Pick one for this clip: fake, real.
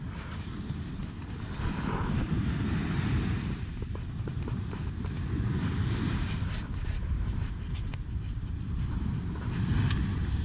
fake